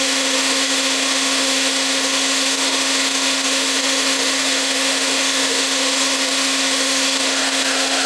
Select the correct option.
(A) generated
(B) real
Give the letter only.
A